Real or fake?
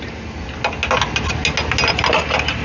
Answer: real